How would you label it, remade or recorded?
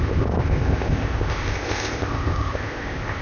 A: remade